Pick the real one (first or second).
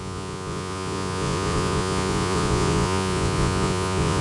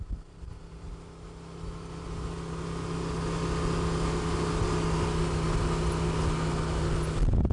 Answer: second